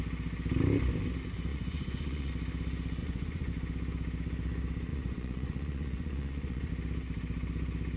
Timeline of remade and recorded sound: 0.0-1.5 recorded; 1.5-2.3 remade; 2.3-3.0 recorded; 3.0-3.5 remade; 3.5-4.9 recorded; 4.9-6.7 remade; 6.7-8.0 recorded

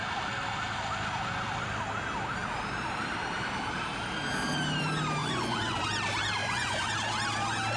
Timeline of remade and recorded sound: 0.0-5.2 recorded; 5.2-5.8 remade; 5.8-6.4 recorded; 6.4-6.9 remade; 6.9-7.8 recorded

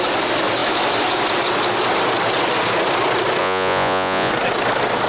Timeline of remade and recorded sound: 0.0-3.4 recorded; 3.4-4.3 remade; 4.3-5.1 recorded

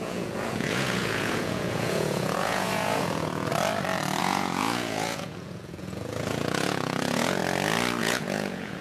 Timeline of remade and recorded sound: 0.0-3.5 remade; 3.5-4.2 recorded; 4.2-7.4 remade; 7.4-8.0 recorded; 8.0-8.8 remade